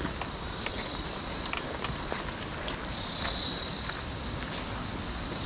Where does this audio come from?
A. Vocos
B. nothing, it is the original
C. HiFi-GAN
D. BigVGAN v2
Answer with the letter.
B